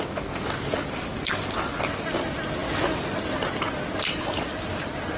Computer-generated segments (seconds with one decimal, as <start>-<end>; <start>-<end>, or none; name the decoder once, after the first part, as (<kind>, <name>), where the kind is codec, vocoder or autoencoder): none